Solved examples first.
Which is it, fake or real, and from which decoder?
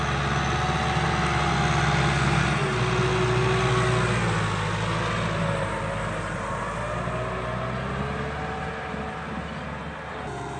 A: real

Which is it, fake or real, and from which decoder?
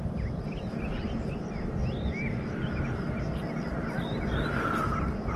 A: real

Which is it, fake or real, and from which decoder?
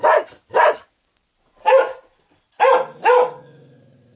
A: real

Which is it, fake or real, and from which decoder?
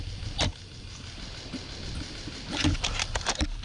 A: real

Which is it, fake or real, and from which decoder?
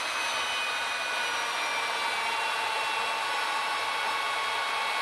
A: real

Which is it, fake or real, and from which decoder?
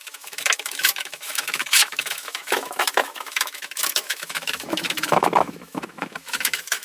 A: fake, autoencoder, DAC-VAE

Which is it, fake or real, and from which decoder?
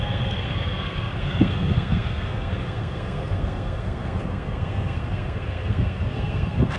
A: fake, codec, SNAC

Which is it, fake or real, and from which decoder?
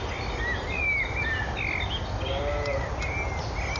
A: real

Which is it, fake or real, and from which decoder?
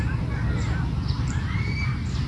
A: real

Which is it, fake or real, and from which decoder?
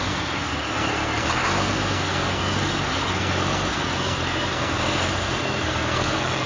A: fake, codec, SNAC